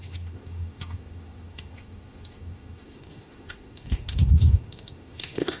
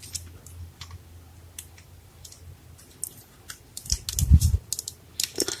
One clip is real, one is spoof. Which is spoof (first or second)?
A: first